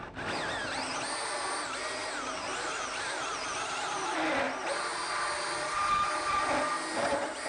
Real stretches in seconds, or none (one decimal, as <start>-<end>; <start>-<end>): 0.0-7.5